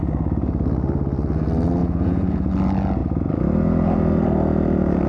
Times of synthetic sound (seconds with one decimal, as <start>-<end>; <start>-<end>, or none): 1.8-2.5